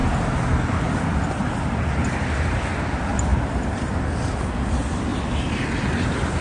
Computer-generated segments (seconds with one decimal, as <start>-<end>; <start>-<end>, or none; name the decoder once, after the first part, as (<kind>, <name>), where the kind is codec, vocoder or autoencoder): none

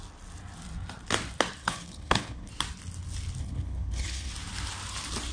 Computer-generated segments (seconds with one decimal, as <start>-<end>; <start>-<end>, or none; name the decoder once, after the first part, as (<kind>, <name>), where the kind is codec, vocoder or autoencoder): 1.6-2.5 (codec, HILCodec); 3.4-4.3